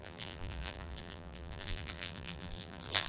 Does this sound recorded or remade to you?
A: remade